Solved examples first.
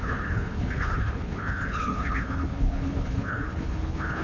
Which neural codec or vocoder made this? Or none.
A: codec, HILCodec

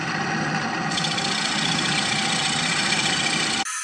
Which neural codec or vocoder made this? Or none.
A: none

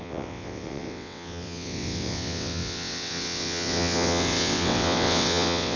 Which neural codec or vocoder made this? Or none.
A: vocoder, WaveNeXt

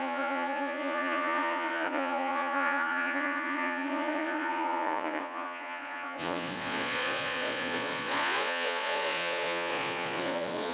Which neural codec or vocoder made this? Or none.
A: vocoder, Vocos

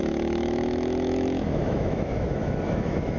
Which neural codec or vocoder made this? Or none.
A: autoencoder, DAC-VAE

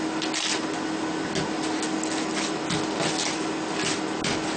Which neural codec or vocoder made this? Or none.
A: none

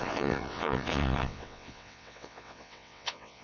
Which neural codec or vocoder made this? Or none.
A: vocoder, WaveNeXt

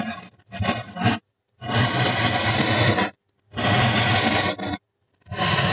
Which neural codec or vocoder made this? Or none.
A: none